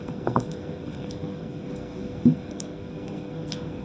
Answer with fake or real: fake